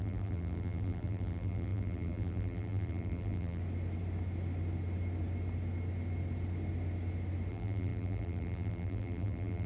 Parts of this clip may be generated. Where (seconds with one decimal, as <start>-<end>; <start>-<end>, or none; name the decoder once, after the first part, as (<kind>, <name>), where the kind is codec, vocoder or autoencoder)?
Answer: 0.0-3.6 (vocoder, BigVGAN v2); 7.5-9.7